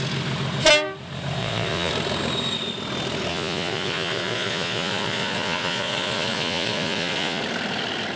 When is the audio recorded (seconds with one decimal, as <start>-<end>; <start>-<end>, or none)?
0.0-1.4; 1.9-3.3; 7.4-8.2